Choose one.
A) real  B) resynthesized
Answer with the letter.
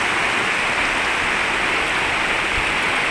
A